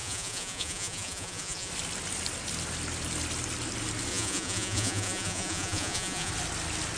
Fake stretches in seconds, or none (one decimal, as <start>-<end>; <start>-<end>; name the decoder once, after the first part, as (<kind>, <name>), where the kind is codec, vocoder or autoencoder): 0.0-1.7 (vocoder, Vocos); 4.1-6.3